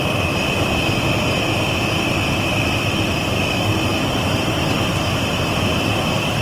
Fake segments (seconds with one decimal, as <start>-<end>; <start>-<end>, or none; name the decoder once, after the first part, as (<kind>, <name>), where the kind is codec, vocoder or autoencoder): none